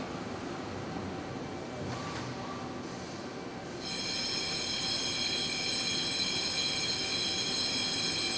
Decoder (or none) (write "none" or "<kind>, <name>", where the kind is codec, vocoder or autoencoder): none